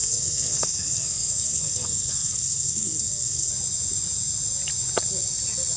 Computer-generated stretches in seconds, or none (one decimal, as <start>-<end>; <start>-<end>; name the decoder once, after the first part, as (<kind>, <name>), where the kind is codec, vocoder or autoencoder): 0.0-3.5 (codec, SNAC)